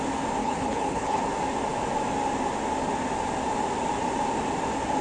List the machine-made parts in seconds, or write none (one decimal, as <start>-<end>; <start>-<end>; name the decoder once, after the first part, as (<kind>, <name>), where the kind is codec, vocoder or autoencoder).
0.4-1.2 (codec, HILCodec)